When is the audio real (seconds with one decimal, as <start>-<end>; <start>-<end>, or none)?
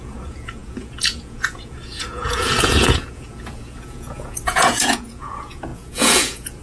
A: none